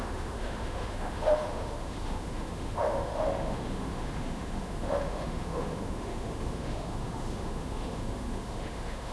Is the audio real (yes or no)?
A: no